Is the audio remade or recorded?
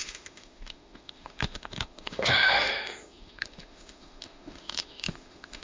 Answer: remade